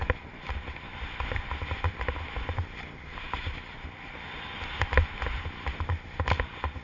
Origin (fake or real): real